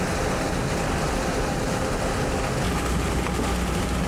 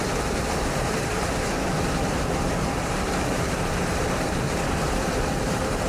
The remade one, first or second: second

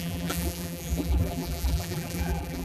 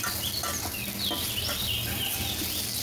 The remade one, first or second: first